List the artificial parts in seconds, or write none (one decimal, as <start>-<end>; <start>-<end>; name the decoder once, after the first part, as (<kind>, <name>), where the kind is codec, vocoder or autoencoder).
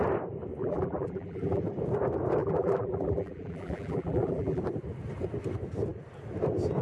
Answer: 0.6-1.6 (vocoder, BigVGAN v2); 2.4-4.6